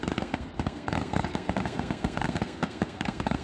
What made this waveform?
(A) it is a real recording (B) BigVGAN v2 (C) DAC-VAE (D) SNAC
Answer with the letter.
D